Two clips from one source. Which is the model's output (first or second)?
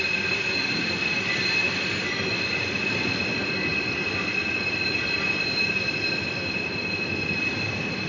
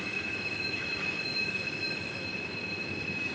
second